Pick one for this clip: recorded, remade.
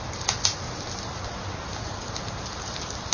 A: recorded